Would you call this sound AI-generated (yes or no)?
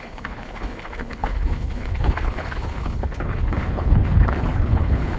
yes